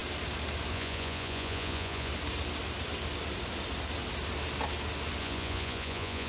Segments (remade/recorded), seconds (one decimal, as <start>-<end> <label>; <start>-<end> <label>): 0.0-0.7 recorded; 0.7-2.1 remade; 2.1-5.2 recorded; 5.2-6.3 remade